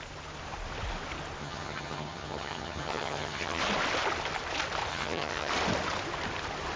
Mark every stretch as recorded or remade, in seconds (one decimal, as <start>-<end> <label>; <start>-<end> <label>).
0.0-1.4 recorded; 1.4-3.6 remade; 3.6-4.9 recorded; 4.9-5.5 remade; 5.5-6.8 recorded